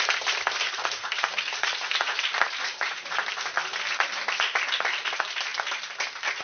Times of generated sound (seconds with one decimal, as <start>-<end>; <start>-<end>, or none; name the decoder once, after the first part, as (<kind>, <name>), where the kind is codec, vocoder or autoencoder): 1.0-3.1 (vocoder, BigVGAN v2)